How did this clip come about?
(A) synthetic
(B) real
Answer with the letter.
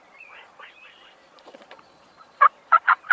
A